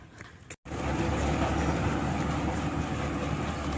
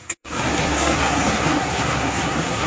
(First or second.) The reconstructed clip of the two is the second